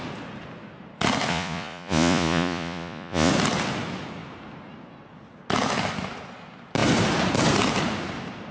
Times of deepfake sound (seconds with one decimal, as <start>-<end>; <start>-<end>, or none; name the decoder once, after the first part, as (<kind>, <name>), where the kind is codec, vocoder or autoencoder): 1.3-3.3 (vocoder, Vocos)